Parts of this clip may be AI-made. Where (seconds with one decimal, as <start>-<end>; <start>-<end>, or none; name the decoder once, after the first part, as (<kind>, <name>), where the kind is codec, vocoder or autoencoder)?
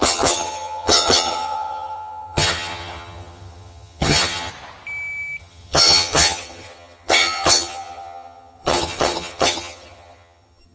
0.0-4.5 (vocoder, HiFi-GAN); 5.4-10.7